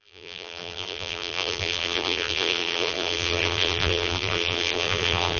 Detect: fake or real fake